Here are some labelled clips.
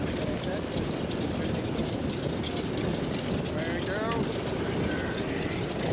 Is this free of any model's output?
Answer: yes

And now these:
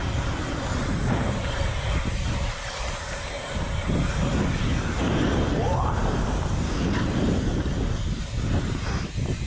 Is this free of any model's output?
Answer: yes